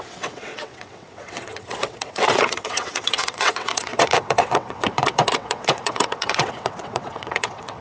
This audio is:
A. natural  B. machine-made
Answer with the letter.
B